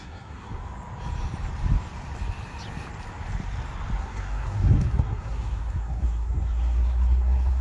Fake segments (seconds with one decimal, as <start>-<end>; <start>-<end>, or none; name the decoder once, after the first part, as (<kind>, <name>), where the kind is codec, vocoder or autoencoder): 0.0-0.6 (codec, SNAC); 4.0-7.6